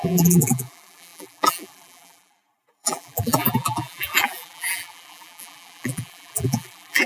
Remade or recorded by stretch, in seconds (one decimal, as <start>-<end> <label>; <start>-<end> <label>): 0.0-7.1 remade